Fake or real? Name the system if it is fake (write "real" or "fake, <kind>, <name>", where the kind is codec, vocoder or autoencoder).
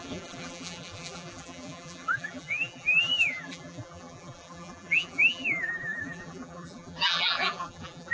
fake, vocoder, BigVGAN v2